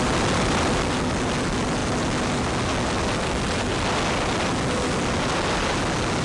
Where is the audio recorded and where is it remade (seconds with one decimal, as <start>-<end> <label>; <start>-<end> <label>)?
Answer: 0.0-6.2 recorded